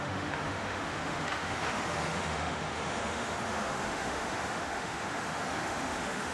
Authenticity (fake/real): fake